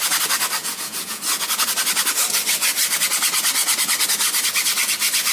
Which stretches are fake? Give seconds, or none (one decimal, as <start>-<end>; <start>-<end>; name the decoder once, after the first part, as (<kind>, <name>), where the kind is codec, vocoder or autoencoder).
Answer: 0.6-1.2 (vocoder, Vocos)